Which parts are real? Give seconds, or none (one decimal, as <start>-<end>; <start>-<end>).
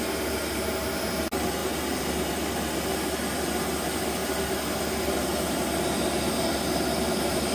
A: 0.0-7.5